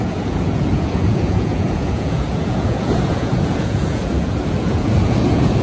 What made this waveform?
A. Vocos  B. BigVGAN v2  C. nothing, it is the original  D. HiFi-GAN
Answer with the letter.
A